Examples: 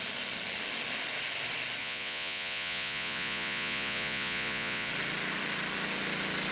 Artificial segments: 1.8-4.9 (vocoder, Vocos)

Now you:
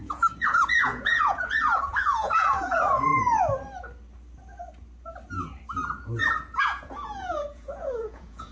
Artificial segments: 0.0-3.1 (vocoder, Vocos); 6.6-8.5

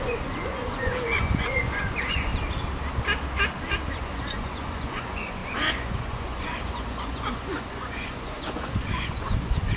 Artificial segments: 0.0-2.3 (vocoder, Vocos); 3.9-9.8

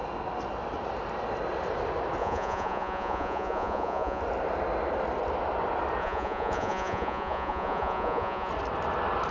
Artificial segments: 2.2-4.2 (vocoder, Vocos); 6.0-8.5

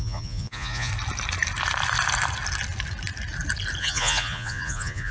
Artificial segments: 0.0-0.9 (vocoder, Vocos); 3.8-5.1